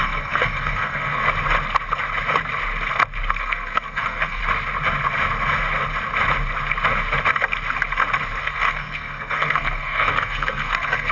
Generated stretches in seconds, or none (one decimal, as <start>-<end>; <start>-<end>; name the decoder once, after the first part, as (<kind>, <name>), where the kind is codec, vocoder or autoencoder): 0.0-1.2 (codec, SNAC); 3.4-4.4; 8.4-11.1